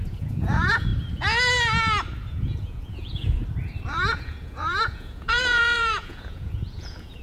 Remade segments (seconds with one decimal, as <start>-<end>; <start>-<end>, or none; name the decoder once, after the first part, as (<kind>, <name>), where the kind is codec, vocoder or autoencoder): 0.0-0.9 (vocoder, Vocos); 2.3-3.4; 3.9-7.2